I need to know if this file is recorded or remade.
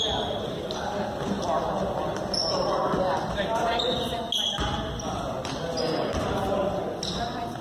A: recorded